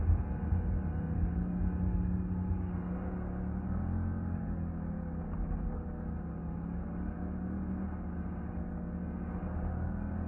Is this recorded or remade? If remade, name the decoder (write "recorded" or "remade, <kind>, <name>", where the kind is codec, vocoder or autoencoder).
recorded